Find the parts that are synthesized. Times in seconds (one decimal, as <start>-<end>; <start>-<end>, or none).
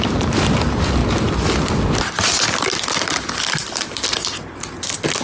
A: 0.0-1.0; 3.1-3.6; 4.1-5.2